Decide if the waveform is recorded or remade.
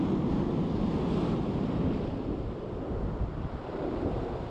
recorded